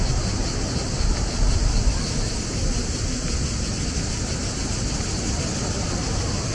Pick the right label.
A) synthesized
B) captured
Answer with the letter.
B